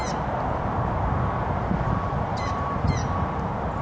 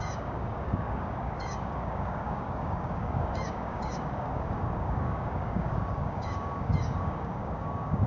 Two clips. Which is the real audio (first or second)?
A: first